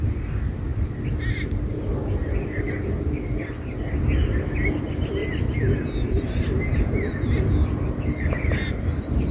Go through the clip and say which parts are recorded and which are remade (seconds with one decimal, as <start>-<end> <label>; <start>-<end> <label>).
0.0-9.3 recorded